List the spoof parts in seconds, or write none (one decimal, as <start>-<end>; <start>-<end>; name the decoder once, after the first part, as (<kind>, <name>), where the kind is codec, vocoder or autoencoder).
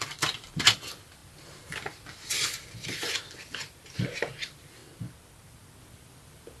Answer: 0.0-1.2 (vocoder, BigVGAN v2); 3.4-4.8; 5.8-6.6